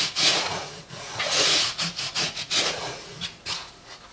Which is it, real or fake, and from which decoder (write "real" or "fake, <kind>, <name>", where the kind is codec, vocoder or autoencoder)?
fake, vocoder, Vocos